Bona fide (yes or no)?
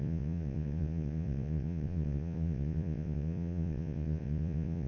no